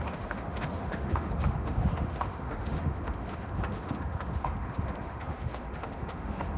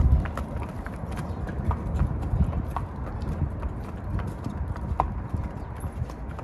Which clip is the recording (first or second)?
second